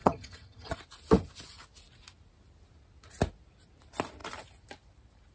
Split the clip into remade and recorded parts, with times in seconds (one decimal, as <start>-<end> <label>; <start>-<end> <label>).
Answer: 0.0-0.8 remade; 0.8-5.3 recorded